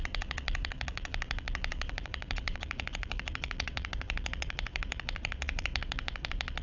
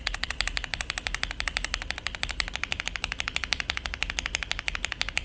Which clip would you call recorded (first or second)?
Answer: second